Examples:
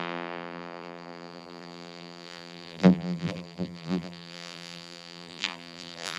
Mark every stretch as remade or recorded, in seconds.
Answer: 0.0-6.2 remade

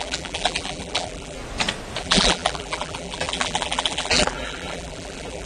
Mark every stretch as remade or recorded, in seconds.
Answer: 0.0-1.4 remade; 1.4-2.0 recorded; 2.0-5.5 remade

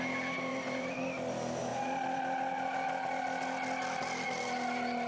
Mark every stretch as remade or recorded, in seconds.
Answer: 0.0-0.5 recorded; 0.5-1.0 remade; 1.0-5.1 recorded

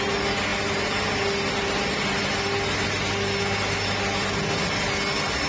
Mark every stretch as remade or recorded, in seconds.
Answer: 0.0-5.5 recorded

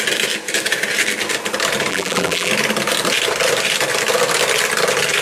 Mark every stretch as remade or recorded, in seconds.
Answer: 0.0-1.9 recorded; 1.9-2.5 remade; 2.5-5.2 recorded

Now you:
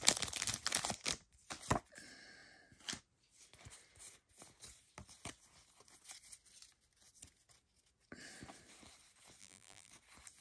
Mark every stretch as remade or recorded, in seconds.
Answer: 0.0-9.4 recorded; 9.4-9.9 remade; 9.9-10.4 recorded

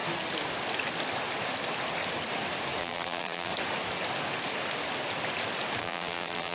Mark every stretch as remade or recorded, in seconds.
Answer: 0.0-2.8 recorded; 2.8-3.5 remade; 3.5-5.8 recorded; 5.8-6.5 remade

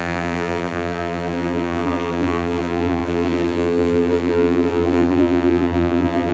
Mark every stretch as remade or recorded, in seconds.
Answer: 0.0-6.3 remade